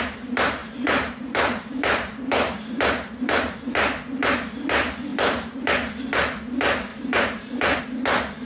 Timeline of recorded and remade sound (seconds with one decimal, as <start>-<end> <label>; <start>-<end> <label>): 0.0-0.6 recorded; 0.6-3.6 remade; 3.6-5.1 recorded; 5.1-5.7 remade; 5.7-6.9 recorded; 6.9-7.8 remade; 7.8-8.5 recorded